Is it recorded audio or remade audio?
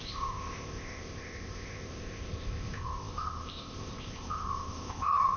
remade